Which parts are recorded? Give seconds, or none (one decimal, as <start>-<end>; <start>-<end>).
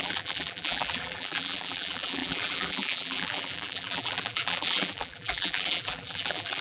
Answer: none